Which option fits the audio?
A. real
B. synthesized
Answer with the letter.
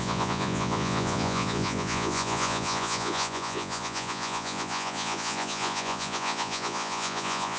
B